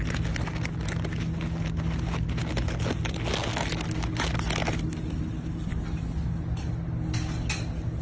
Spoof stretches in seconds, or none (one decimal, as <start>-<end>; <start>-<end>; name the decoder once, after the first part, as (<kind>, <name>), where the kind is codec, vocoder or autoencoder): none

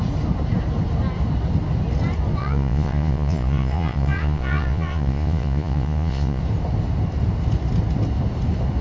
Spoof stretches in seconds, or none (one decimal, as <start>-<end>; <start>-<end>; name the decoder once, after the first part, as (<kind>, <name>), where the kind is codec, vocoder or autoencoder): 2.4-6.4 (vocoder, Vocos)

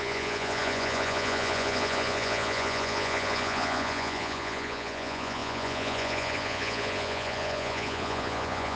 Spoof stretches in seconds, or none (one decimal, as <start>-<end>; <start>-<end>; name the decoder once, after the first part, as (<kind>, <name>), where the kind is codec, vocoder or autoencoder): 0.0-8.8 (vocoder, Vocos)

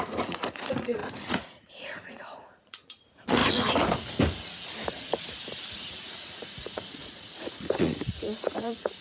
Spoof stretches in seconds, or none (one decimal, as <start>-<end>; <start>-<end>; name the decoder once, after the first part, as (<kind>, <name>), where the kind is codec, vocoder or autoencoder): 0.0-3.4 (vocoder, Vocos); 5.7-9.0

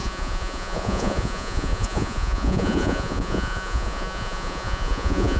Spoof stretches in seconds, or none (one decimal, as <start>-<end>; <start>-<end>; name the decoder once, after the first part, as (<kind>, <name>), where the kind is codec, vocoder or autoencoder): 0.0-5.4 (vocoder, Vocos)

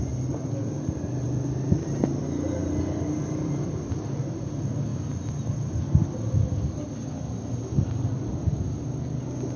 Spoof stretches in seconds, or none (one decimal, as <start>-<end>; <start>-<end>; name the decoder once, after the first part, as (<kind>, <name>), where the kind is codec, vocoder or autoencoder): none